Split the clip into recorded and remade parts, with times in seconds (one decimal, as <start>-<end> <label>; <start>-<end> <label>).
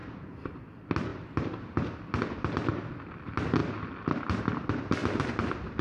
0.0-0.6 remade; 0.6-1.1 recorded; 1.1-2.9 remade; 2.9-5.0 recorded; 5.0-5.8 remade